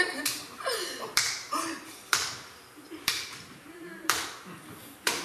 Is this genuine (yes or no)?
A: no